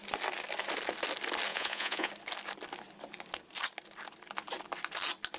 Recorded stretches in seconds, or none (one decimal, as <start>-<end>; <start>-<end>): 0.0-1.5; 2.1-5.4